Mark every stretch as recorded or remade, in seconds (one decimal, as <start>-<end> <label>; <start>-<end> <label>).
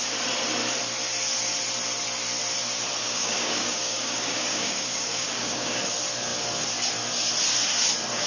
0.0-3.0 recorded; 3.0-5.8 remade; 5.8-8.3 recorded